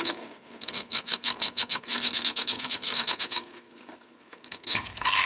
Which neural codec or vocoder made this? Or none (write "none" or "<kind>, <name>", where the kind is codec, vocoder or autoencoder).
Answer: codec, SNAC